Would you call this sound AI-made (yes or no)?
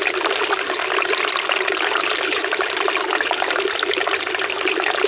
no